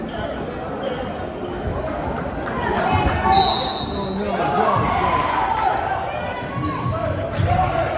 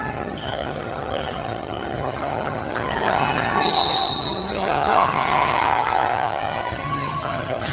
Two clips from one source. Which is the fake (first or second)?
second